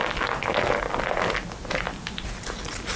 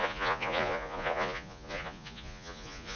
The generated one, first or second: second